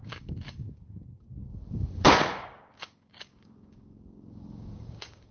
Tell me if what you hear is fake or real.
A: fake